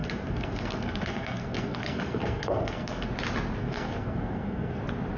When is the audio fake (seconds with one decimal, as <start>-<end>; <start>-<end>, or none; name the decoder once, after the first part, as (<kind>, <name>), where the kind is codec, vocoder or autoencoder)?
0.0-3.1 (codec, SNAC); 3.6-4.8